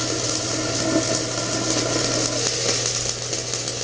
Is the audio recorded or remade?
recorded